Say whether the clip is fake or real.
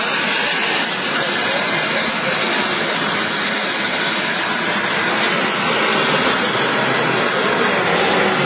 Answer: real